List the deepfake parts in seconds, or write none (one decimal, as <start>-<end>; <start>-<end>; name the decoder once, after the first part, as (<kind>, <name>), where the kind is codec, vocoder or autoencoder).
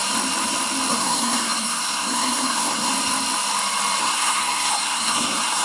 0.9-2.9 (codec, SNAC); 4.0-5.6